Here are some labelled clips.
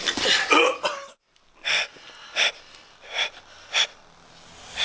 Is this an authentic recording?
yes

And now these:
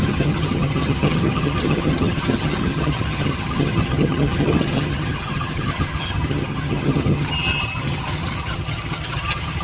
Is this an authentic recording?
no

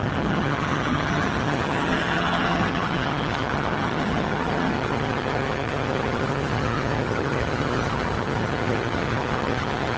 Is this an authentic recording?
no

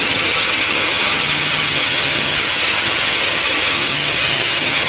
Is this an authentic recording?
no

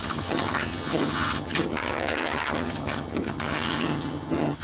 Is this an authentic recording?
no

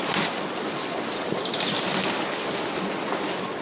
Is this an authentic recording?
yes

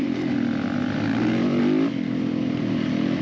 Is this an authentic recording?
yes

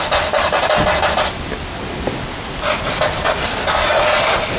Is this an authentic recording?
yes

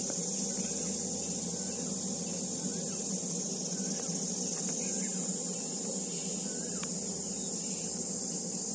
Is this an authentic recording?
yes